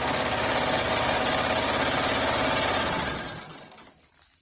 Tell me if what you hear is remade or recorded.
recorded